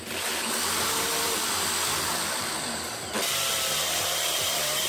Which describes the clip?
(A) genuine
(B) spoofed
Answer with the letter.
B